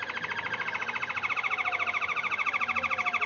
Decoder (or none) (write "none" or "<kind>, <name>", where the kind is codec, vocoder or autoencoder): none